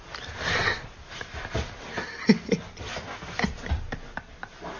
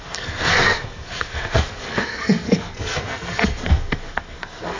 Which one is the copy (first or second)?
second